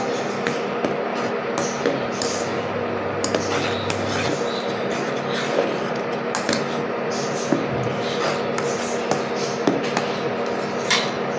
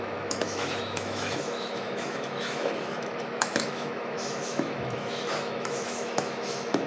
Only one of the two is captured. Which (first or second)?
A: first